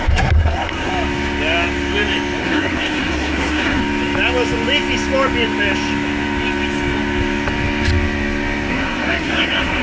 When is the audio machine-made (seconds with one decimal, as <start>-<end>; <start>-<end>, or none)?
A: 0.0-0.9; 2.4-3.8; 8.7-9.8